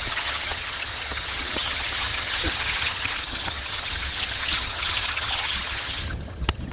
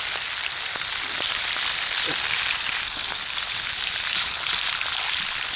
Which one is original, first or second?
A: second